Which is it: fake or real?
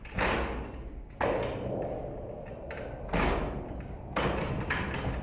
real